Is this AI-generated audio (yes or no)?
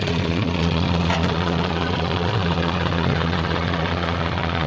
yes